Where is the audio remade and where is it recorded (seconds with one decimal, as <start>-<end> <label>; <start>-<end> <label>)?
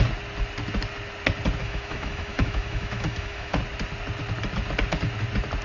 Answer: 0.0-1.6 recorded; 1.6-3.6 remade; 3.6-5.6 recorded